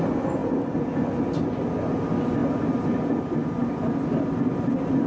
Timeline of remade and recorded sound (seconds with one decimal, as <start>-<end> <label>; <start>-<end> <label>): 0.0-5.1 recorded